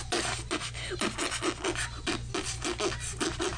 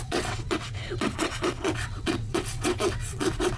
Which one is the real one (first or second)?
first